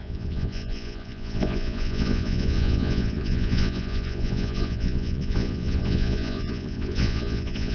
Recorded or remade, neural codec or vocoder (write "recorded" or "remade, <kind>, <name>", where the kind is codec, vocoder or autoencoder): remade, vocoder, Vocos